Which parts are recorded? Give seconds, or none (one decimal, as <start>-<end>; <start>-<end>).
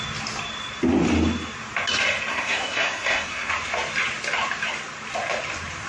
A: 0.0-2.3; 3.5-5.9